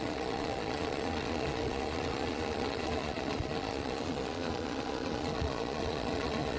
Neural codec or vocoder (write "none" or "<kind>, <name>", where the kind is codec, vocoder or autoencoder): vocoder, Vocos